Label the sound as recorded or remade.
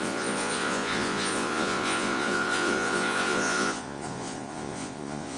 remade